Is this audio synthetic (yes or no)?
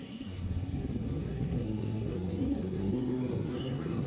yes